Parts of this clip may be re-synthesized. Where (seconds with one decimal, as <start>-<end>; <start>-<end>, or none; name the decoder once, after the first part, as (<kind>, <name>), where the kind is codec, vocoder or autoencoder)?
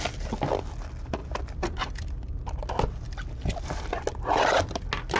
none